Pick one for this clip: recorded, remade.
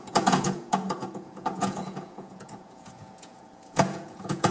remade